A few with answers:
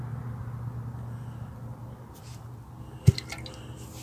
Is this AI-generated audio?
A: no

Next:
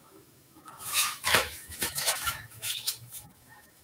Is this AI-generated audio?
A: yes